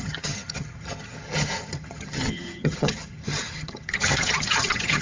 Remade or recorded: remade